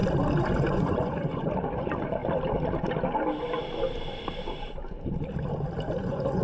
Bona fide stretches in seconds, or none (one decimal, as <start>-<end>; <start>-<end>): 0.0-0.6; 2.2-6.0